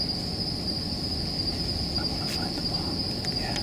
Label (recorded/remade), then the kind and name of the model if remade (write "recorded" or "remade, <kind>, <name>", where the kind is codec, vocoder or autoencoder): recorded